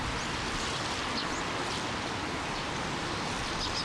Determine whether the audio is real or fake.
real